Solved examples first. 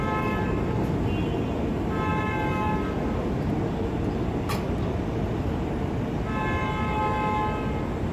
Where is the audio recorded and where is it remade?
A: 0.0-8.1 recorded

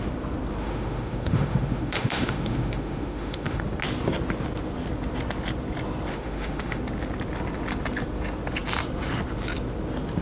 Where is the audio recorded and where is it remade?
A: 0.0-0.6 recorded; 0.6-3.6 remade; 3.6-6.1 recorded; 6.1-6.8 remade; 6.8-10.2 recorded

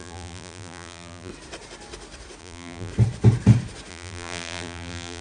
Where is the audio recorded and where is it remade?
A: 0.0-1.3 remade; 1.3-2.4 recorded; 2.4-2.9 remade; 2.9-3.9 recorded; 3.9-5.2 remade

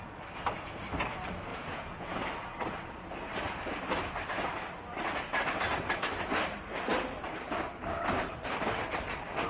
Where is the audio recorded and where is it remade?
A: 0.0-1.5 recorded; 1.5-2.2 remade; 2.2-9.5 recorded

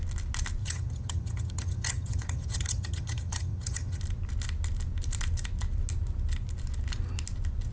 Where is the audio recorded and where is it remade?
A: 0.0-0.6 recorded; 0.6-4.0 remade; 4.0-7.7 recorded

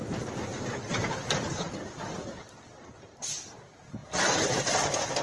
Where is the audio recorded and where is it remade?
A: 0.0-4.0 recorded; 4.0-4.6 remade; 4.6-5.2 recorded

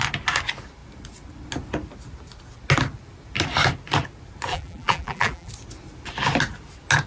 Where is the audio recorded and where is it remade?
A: 0.0-4.5 recorded; 4.5-5.5 remade; 5.5-7.1 recorded

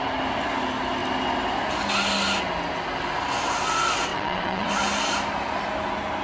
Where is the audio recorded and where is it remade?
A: 0.0-4.1 recorded; 4.1-4.7 remade; 4.7-6.2 recorded